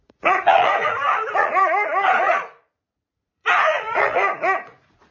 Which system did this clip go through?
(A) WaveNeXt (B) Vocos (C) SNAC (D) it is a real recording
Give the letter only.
B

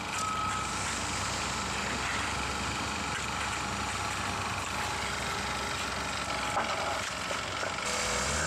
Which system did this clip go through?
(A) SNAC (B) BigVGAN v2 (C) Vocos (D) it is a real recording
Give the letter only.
D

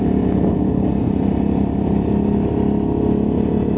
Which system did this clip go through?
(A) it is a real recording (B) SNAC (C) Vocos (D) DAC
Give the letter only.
A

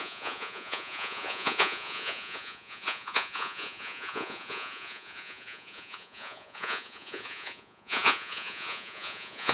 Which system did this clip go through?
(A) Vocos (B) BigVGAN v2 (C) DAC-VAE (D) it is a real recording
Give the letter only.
A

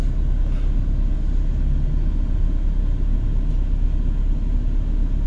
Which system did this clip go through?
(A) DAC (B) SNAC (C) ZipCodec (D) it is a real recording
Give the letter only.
D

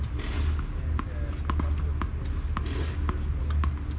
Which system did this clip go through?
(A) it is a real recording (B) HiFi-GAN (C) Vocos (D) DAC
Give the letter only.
A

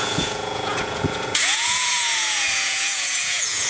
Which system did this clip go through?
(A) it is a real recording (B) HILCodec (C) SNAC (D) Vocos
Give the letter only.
D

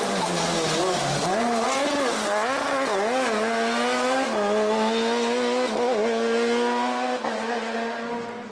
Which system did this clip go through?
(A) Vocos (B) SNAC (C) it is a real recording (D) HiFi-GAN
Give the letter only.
C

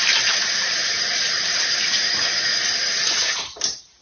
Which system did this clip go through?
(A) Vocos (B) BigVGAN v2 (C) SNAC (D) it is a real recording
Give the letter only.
B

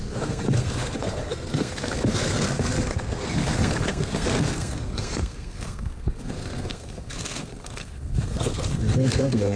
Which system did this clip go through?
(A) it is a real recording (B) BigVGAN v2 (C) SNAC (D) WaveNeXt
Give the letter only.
C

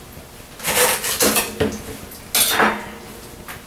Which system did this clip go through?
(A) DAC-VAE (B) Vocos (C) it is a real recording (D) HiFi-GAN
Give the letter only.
C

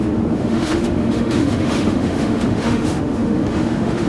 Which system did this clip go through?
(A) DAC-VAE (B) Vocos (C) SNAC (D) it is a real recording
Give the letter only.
A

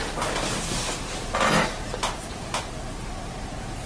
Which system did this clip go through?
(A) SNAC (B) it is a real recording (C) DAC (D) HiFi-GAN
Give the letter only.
B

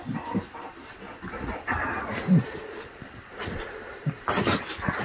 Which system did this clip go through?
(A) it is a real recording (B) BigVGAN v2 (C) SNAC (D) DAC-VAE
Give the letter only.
A